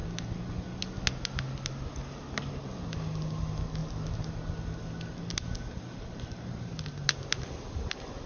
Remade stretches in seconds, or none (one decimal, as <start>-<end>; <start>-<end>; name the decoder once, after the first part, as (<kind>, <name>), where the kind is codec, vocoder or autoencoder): none